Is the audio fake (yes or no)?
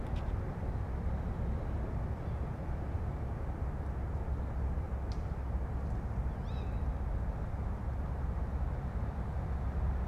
no